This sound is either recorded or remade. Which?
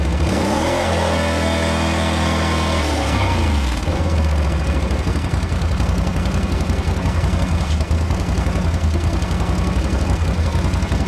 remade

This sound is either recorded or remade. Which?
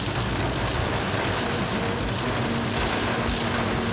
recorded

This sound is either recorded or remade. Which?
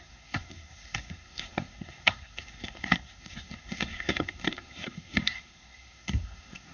remade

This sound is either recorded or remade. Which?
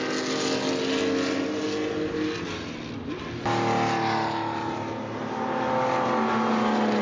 recorded